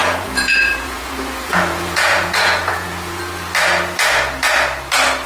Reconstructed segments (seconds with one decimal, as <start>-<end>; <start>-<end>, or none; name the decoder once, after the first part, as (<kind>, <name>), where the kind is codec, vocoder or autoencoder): 0.0-3.2 (vocoder, Vocos)